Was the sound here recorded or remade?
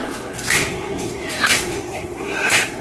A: remade